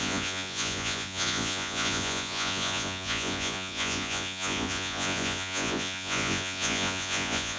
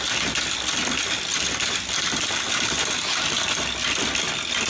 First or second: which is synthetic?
first